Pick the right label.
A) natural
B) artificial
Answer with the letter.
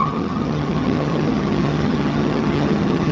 B